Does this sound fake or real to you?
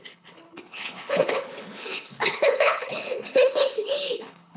fake